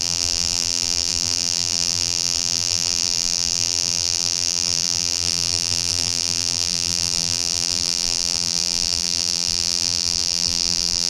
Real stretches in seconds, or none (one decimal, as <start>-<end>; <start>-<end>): none